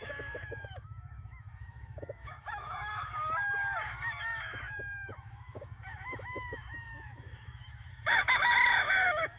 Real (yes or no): no